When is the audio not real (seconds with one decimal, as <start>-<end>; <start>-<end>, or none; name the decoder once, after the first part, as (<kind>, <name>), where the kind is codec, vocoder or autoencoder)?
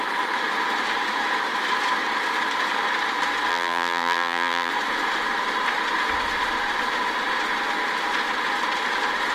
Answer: 3.5-4.7 (vocoder, BigVGAN v2)